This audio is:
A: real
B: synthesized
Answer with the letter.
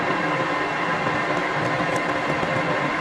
A